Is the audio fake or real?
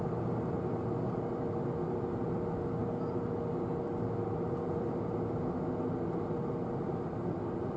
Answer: real